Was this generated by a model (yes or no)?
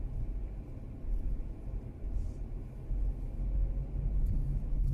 no